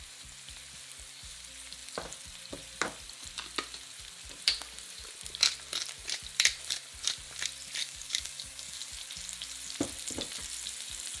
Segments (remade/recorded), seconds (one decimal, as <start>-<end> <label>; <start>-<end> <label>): 0.0-7.8 recorded; 7.8-8.9 remade; 8.9-11.2 recorded